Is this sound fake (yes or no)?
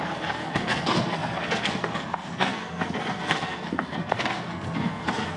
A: yes